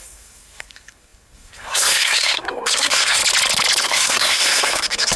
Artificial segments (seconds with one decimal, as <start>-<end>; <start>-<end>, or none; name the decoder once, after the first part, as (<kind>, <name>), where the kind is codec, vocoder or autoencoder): 0.0-3.2 (codec, SNAC); 3.8-5.2